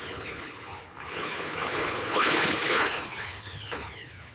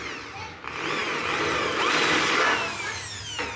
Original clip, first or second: second